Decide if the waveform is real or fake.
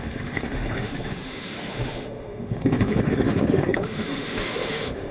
fake